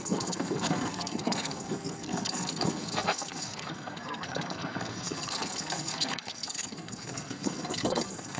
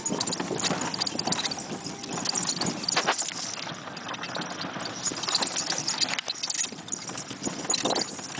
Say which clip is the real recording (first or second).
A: second